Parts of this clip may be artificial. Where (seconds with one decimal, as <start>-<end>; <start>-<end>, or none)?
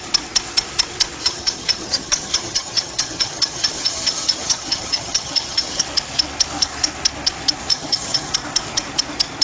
1.2-5.8; 7.7-8.3